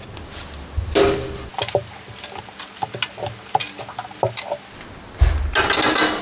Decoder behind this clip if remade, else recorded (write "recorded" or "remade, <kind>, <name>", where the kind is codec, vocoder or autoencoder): recorded